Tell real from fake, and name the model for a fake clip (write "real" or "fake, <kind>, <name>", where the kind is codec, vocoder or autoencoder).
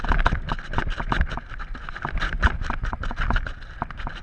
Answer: real